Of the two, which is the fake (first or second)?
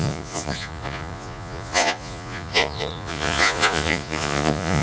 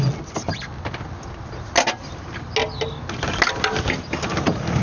first